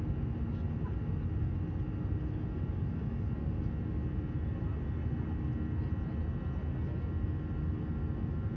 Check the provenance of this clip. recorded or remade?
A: recorded